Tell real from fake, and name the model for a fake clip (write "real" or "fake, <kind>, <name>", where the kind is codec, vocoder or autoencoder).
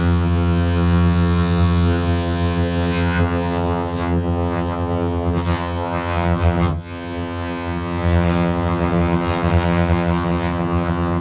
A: fake, vocoder, HiFi-GAN